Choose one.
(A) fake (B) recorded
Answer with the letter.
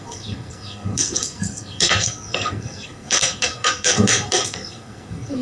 A